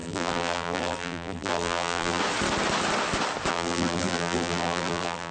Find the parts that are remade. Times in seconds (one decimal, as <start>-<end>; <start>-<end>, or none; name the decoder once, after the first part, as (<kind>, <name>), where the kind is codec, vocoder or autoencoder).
0.0-2.2 (vocoder, BigVGAN v2); 3.5-5.3